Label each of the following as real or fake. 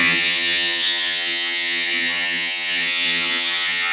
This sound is fake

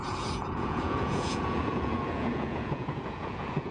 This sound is fake